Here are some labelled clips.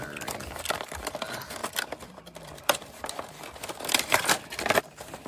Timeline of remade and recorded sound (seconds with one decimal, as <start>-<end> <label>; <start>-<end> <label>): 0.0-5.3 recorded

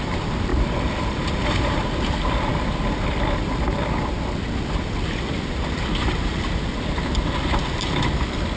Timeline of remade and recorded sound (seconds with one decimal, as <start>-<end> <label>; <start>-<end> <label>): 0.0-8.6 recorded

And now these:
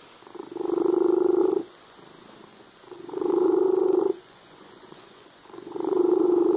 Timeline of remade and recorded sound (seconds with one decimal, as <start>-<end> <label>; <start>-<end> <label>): 0.0-1.4 recorded; 1.4-2.0 remade; 2.0-2.5 recorded; 2.5-6.6 remade

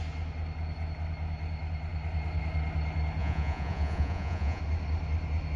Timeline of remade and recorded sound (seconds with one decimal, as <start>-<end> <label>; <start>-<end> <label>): 0.0-3.2 recorded; 3.2-4.6 remade; 4.6-5.6 recorded